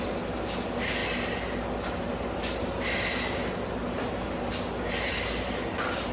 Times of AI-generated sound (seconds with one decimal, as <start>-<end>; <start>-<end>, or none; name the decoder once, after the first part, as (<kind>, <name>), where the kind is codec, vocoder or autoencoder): none